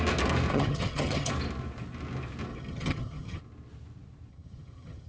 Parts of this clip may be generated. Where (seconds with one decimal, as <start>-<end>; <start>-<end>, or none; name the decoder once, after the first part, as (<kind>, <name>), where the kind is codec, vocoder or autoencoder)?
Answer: 0.5-1.3 (vocoder, HiFi-GAN); 2.5-3.4; 4.3-5.1